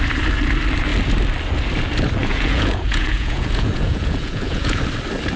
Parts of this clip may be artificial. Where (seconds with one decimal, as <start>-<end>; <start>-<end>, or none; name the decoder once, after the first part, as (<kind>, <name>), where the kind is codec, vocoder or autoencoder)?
2.2-4.8 (vocoder, Vocos)